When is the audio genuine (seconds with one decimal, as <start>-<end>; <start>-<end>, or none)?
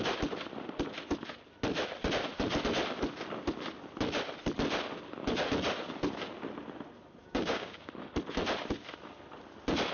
0.0-7.2; 7.9-9.9